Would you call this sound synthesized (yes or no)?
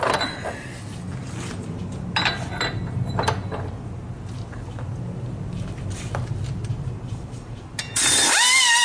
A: no